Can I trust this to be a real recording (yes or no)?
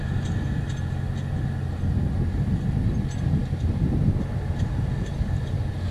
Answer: yes